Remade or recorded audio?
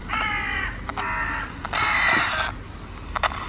recorded